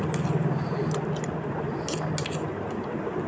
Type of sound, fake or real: real